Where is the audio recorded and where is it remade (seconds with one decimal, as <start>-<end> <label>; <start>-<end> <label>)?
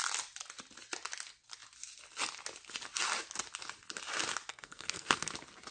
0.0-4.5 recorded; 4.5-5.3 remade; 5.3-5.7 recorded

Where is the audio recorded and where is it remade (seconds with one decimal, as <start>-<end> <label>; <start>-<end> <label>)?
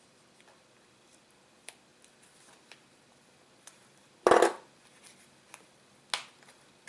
0.0-6.9 recorded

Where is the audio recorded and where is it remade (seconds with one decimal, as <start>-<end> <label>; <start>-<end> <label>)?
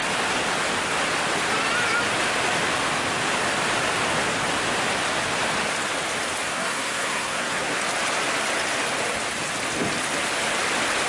0.0-6.5 recorded; 6.5-7.8 remade; 7.8-11.1 recorded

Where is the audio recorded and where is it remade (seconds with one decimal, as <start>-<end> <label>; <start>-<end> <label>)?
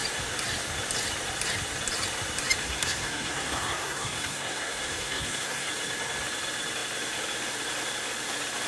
0.0-2.6 recorded; 2.6-5.7 remade; 5.7-8.7 recorded